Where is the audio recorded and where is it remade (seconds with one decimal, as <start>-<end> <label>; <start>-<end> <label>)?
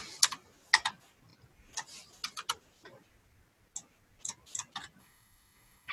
0.0-5.0 recorded; 5.0-5.9 remade